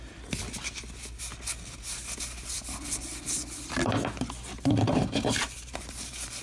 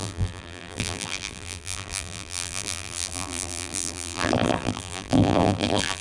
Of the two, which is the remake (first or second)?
second